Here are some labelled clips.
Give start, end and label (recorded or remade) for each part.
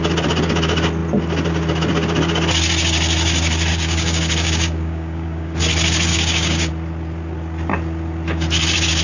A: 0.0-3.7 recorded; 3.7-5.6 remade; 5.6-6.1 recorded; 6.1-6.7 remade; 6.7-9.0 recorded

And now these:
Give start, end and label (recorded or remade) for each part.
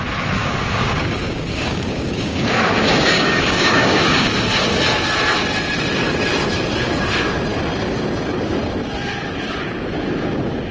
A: 0.0-0.4 recorded; 0.4-4.3 remade; 4.3-10.7 recorded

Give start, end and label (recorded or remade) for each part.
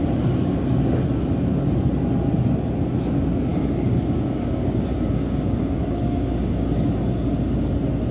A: 0.0-3.5 recorded; 3.5-6.9 remade; 6.9-8.1 recorded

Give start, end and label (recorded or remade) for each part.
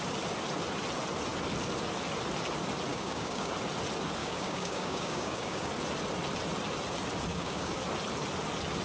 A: 0.0-2.9 recorded; 2.9-3.5 remade; 3.5-4.2 recorded; 4.2-5.7 remade; 5.7-7.3 recorded; 7.3-7.8 remade; 7.8-8.8 recorded